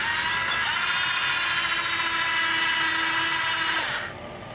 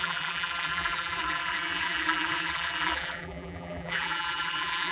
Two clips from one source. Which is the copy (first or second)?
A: second